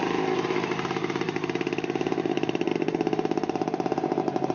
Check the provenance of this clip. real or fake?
fake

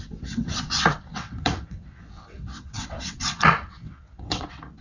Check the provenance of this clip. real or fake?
fake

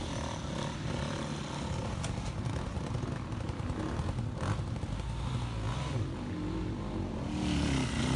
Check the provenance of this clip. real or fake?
real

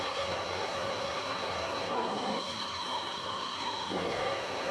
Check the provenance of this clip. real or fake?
fake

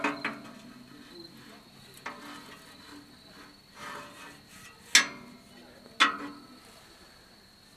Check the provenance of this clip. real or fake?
real